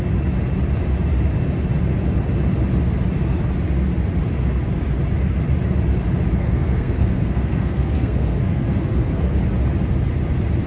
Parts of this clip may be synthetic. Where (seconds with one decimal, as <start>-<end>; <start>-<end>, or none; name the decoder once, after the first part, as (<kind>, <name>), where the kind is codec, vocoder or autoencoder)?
6.4-9.4 (codec, SNAC)